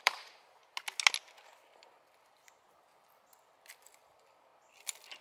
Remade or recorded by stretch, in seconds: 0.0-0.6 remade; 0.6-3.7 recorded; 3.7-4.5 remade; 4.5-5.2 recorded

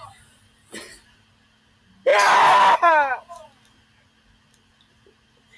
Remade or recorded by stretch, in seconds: 0.0-5.6 recorded

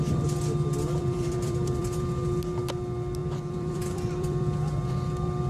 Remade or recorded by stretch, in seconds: 0.0-1.0 recorded; 1.0-2.0 remade; 2.0-3.2 recorded; 3.2-4.9 remade; 4.9-5.5 recorded